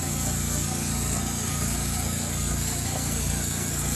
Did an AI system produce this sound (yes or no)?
yes